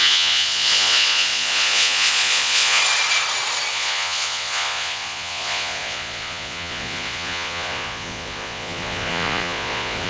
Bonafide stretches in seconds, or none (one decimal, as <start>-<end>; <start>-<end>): 2.8-3.7